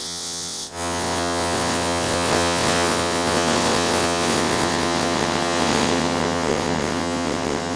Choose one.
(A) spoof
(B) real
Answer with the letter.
A